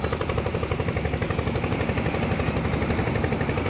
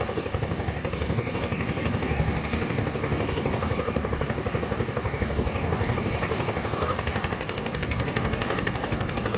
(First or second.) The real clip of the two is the first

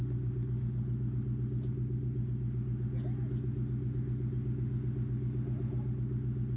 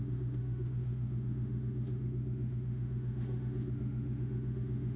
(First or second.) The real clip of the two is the first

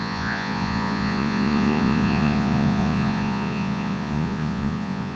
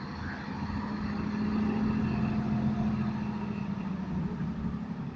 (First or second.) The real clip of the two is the second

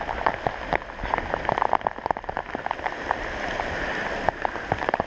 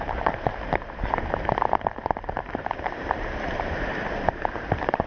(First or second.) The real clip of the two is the first